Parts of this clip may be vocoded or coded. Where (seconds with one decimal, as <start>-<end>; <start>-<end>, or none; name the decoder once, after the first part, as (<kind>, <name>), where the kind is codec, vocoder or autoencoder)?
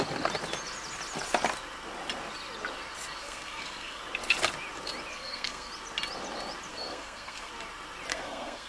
3.2-4.0 (codec, SNAC); 5.1-5.7; 6.7-7.5; 8.1-8.7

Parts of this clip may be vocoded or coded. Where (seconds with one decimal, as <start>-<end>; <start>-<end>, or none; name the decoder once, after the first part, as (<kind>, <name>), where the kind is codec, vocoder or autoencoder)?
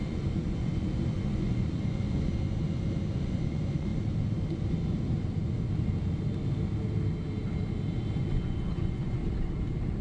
0.0-2.3 (vocoder, Vocos); 3.1-3.9; 8.2-9.2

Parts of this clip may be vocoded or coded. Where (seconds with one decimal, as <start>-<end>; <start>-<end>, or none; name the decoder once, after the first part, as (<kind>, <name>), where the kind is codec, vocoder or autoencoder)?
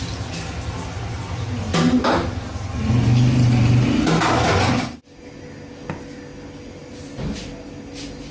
none